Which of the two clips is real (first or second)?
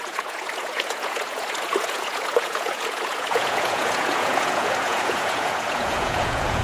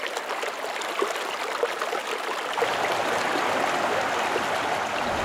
second